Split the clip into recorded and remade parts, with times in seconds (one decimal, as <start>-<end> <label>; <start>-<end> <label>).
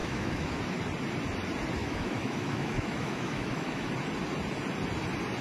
0.0-0.6 remade; 0.6-1.8 recorded; 1.8-3.9 remade; 3.9-5.4 recorded